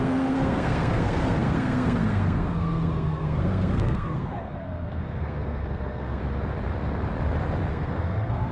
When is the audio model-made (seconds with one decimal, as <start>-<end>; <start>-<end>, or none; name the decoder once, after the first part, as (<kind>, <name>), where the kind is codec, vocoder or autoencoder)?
0.0-6.2 (codec, SNAC); 7.7-8.5